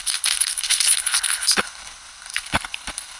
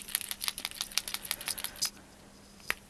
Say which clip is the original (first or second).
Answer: second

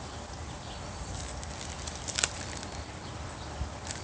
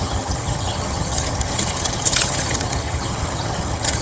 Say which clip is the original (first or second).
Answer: first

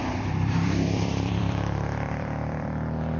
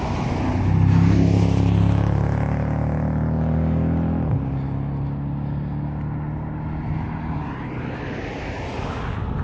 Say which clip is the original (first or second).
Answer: second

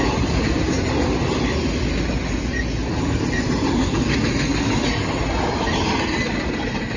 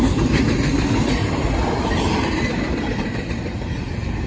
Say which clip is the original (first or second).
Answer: first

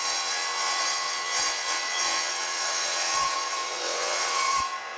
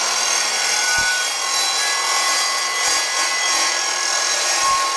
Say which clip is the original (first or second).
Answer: second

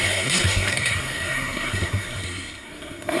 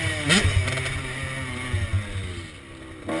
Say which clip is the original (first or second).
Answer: second